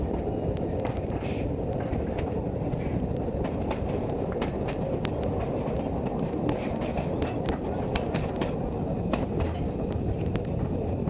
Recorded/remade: recorded